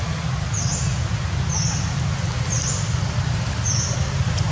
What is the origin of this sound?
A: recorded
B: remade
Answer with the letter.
A